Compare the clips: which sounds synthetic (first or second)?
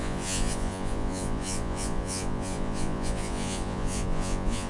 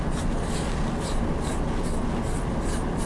first